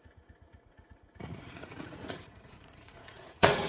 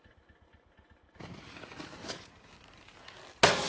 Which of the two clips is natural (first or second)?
second